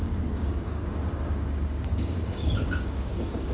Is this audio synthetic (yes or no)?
yes